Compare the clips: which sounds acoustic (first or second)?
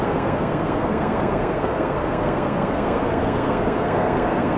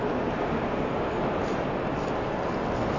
second